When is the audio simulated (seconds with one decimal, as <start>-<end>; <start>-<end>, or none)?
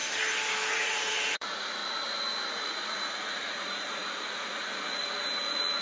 0.7-1.8; 2.5-5.8